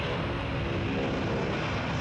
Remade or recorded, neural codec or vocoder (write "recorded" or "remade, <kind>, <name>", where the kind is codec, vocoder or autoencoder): recorded